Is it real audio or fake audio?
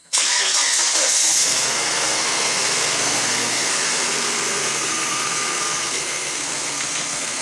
fake